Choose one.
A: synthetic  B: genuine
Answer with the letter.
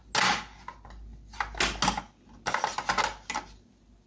B